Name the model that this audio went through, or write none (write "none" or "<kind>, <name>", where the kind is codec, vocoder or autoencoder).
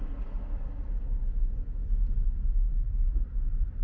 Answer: none